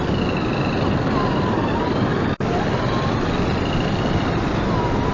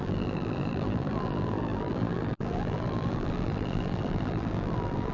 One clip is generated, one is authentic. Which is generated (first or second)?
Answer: second